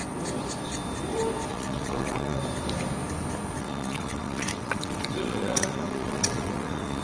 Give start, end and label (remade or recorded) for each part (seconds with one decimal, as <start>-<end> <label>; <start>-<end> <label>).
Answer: 0.0-1.5 recorded; 1.5-2.4 remade; 2.4-3.6 recorded; 3.6-7.0 remade